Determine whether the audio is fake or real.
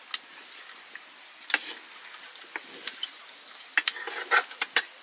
real